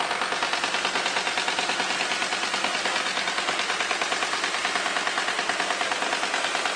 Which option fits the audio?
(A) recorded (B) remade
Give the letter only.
A